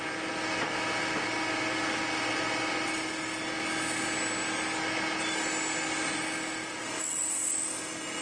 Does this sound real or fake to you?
real